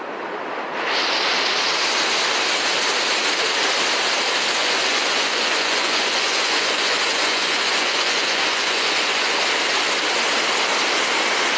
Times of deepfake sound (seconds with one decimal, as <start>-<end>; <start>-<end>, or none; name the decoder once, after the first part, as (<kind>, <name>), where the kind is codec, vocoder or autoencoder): 4.6-9.4 (vocoder, Vocos)